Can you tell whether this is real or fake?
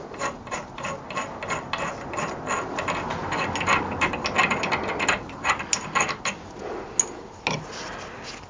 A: real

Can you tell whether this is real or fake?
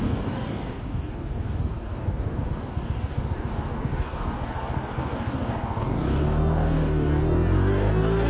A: fake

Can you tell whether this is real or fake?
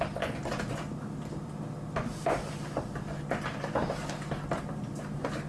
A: real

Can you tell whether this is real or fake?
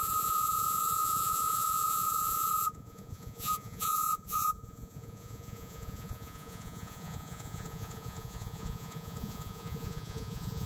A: fake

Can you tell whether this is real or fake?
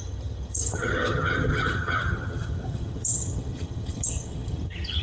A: fake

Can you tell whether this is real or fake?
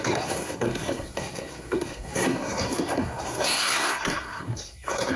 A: fake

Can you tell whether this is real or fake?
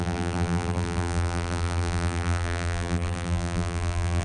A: fake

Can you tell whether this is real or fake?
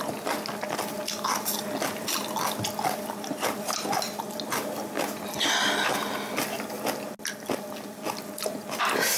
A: real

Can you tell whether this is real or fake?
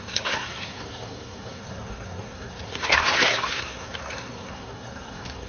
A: fake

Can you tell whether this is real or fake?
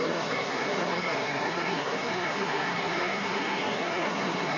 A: fake